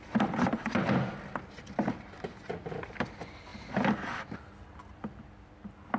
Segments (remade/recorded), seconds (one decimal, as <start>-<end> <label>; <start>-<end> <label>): 0.0-3.5 recorded; 3.5-4.4 remade; 4.4-6.0 recorded